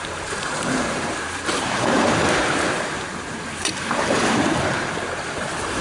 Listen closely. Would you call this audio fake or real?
fake